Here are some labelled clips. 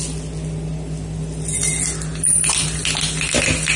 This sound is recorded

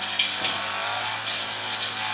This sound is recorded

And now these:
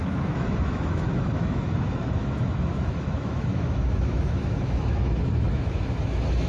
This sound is remade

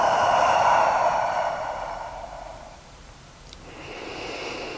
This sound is remade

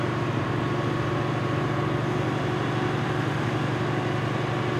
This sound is recorded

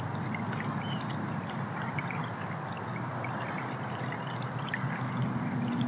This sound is recorded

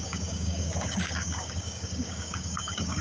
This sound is remade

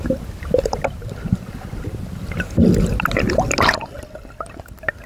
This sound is recorded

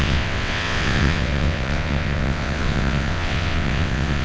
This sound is remade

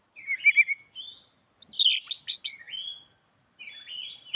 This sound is recorded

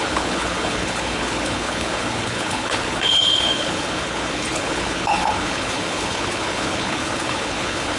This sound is remade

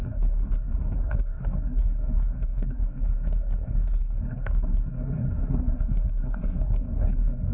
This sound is remade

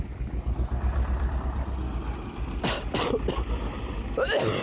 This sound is recorded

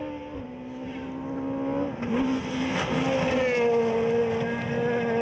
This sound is recorded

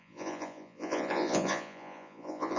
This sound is remade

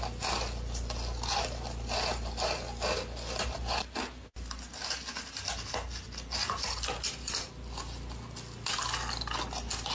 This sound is recorded